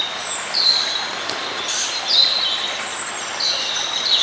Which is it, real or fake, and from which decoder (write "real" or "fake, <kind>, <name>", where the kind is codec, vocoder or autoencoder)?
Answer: real